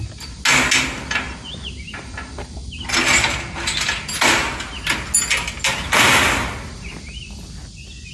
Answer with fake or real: real